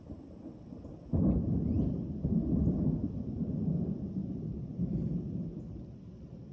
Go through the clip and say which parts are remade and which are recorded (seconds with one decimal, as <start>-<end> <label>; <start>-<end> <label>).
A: 0.0-6.5 recorded